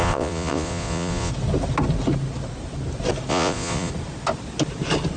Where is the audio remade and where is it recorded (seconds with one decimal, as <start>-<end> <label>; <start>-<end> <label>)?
0.0-1.3 remade; 1.3-3.3 recorded; 3.3-3.9 remade; 3.9-5.2 recorded